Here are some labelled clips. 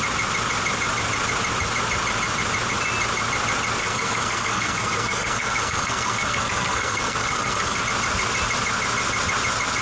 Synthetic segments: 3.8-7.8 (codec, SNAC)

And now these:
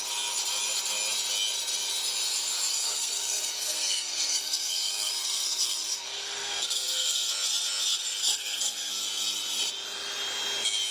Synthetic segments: 2.7-7.3 (codec, SNAC); 8.2-8.9